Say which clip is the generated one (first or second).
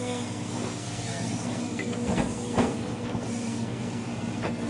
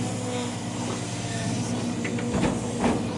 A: first